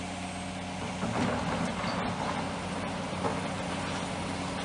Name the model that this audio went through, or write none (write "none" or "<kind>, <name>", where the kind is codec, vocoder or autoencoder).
none